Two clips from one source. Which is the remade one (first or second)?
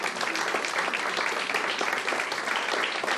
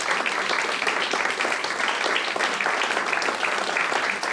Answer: first